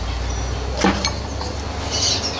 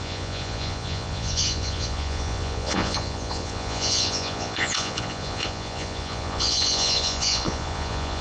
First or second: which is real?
first